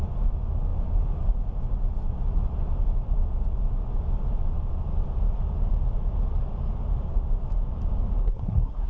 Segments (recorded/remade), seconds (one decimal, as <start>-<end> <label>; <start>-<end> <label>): 0.0-8.2 recorded; 8.2-8.9 remade